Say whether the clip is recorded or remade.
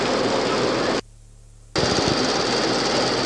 recorded